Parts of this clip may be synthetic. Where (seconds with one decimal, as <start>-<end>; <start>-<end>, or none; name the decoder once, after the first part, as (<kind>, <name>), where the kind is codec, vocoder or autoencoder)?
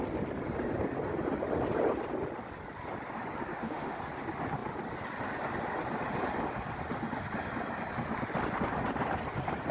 3.5-4.0 (autoencoder, DAC-VAE)